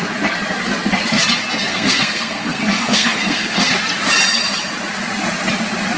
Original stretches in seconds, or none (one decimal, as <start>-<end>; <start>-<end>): 0.0-1.7; 3.7-6.0